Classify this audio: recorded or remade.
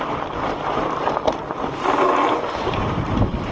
recorded